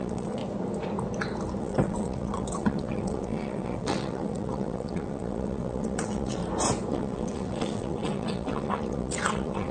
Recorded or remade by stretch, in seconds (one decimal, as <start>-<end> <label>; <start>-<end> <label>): 0.0-0.4 remade; 0.4-1.6 recorded; 1.6-6.4 remade; 6.4-6.9 recorded; 6.9-9.7 remade